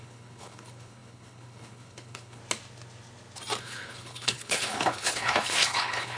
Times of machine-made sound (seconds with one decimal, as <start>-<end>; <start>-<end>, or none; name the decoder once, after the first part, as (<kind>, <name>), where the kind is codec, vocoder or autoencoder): 0.0-2.4 (codec, HILCodec); 3.6-6.2